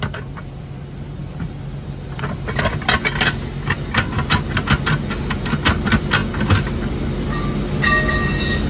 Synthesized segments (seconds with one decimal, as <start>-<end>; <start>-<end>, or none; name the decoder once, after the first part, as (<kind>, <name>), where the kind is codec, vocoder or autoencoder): none